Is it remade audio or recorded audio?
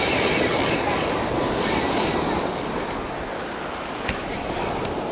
recorded